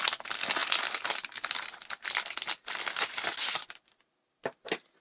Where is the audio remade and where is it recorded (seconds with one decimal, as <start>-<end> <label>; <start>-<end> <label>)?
0.0-5.0 recorded